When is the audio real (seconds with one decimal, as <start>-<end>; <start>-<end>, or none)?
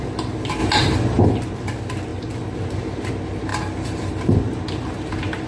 0.0-5.5